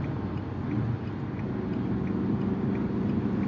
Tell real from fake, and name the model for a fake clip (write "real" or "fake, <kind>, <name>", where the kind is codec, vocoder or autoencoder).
real